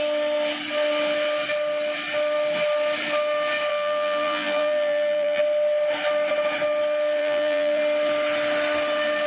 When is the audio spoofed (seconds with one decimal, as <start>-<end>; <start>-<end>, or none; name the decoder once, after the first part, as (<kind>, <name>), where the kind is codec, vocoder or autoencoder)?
3.7-5.4 (vocoder, BigVGAN v2); 7.2-7.8

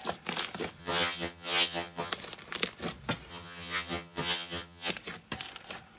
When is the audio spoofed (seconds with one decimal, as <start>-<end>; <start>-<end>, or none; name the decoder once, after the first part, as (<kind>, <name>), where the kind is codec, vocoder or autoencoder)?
0.8-2.1 (vocoder, HiFi-GAN); 3.3-4.9